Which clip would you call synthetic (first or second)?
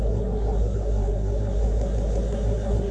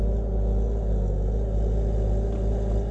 first